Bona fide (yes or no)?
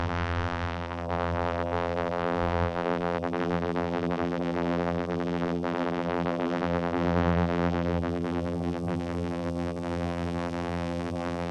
no